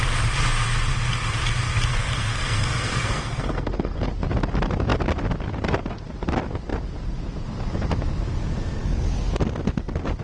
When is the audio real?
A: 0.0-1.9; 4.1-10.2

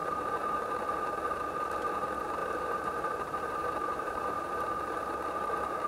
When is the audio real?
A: 0.0-2.4; 4.6-5.9